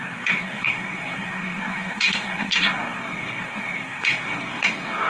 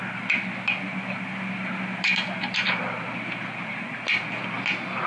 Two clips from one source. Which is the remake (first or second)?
first